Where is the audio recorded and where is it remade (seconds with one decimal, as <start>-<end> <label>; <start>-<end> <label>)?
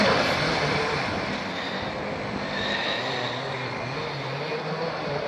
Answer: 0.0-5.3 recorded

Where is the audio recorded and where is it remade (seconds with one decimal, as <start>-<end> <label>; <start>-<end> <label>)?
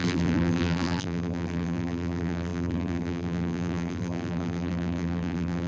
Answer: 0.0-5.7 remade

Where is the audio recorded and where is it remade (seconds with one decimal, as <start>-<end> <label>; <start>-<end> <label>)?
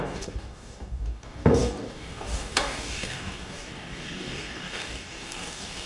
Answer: 0.0-5.9 remade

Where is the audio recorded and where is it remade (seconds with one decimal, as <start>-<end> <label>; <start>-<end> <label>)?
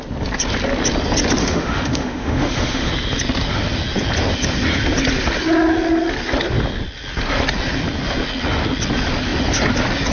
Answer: 0.0-1.4 recorded; 1.4-2.9 remade; 2.9-10.1 recorded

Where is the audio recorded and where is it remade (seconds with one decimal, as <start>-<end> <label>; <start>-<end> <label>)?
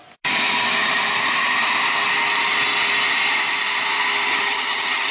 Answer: 0.0-4.3 recorded; 4.3-5.1 remade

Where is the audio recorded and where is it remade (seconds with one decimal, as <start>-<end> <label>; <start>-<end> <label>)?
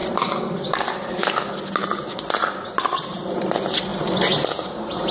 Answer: 0.0-1.1 remade; 1.1-5.1 recorded